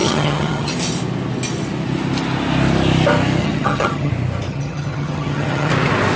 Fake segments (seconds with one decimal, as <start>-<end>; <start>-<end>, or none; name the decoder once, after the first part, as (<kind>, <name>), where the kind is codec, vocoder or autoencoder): 0.0-0.7 (vocoder, HiFi-GAN); 3.4-4.1; 4.5-5.7